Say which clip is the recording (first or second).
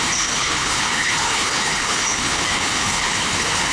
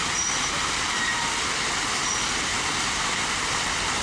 second